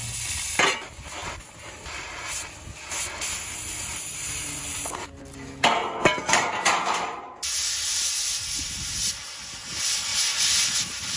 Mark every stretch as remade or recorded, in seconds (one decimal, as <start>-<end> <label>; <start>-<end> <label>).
0.0-1.2 recorded; 1.2-2.5 remade; 2.5-5.8 recorded; 5.8-8.0 remade; 8.0-10.1 recorded; 10.1-11.2 remade